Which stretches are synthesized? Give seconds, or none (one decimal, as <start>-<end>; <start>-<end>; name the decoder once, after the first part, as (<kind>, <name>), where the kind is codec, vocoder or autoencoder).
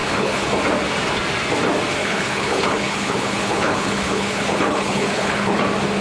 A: 0.0-0.5 (codec, HILCodec); 2.0-5.6